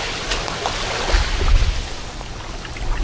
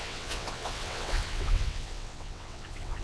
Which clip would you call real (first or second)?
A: first